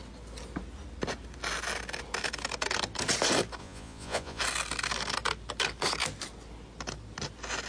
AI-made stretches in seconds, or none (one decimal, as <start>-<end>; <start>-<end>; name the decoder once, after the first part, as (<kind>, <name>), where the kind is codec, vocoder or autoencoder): 3.6-4.4 (vocoder, Vocos)